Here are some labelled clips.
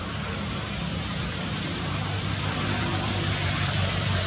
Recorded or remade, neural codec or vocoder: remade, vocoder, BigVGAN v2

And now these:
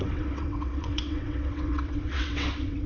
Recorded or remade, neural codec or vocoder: remade, vocoder, WaveNeXt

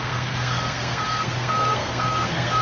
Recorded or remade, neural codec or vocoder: remade, codec, SNAC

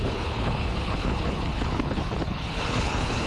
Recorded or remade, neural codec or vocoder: remade, codec, HILCodec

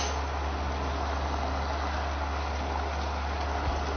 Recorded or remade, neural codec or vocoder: recorded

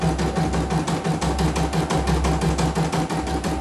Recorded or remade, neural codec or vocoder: recorded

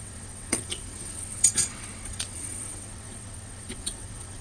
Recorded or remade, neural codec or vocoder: remade, vocoder, WaveNeXt